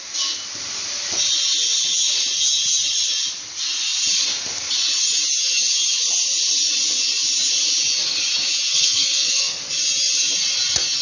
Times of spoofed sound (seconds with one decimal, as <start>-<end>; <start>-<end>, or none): 8.7-9.6